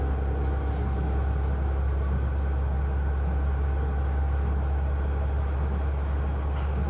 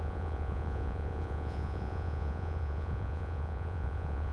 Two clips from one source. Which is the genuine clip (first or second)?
first